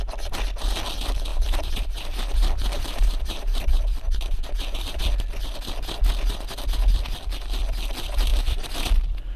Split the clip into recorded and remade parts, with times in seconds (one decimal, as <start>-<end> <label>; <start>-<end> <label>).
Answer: 0.0-1.3 recorded; 1.3-5.0 remade; 5.0-8.3 recorded; 8.3-9.0 remade; 9.0-9.4 recorded